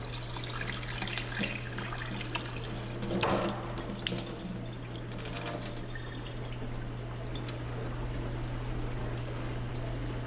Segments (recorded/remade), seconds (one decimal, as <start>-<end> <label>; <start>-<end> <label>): 0.0-9.0 recorded; 9.0-9.7 remade; 9.7-10.3 recorded